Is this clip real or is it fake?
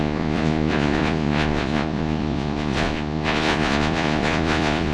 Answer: fake